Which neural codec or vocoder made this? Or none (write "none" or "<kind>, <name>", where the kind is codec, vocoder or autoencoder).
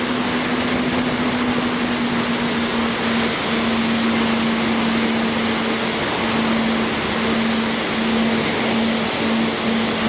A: none